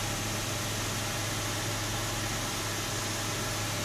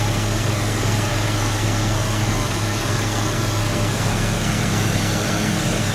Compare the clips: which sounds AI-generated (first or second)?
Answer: second